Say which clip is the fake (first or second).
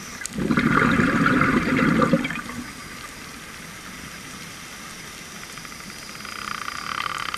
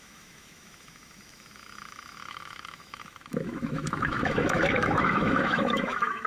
second